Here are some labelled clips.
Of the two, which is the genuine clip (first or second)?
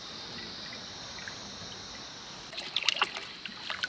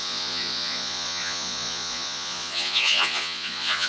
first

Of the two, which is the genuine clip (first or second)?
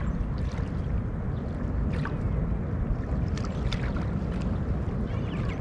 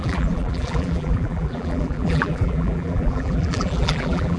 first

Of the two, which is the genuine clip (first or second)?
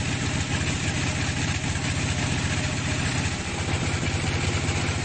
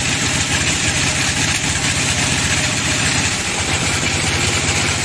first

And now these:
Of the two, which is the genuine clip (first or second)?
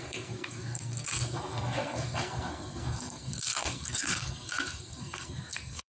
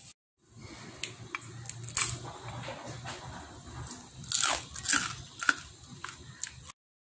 second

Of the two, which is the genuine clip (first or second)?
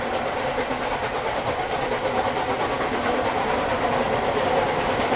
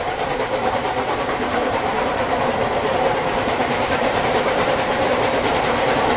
first